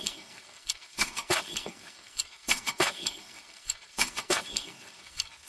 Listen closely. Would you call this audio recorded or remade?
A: remade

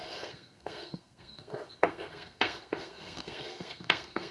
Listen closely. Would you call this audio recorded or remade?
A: remade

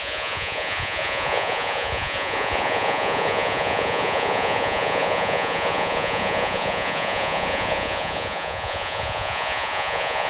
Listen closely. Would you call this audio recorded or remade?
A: remade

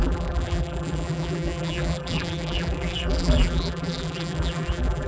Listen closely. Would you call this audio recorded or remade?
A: remade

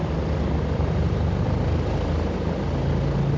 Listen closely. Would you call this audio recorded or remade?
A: recorded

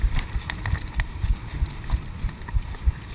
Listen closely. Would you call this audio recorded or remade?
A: recorded